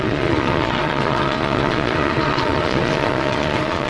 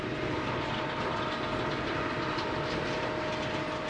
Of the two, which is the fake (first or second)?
first